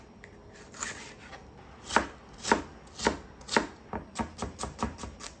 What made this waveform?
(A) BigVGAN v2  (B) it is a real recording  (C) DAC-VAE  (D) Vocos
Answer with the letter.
B